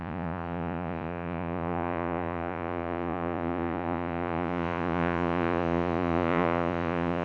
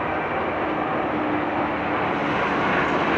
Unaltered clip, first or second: second